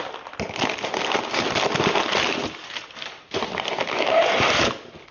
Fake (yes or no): no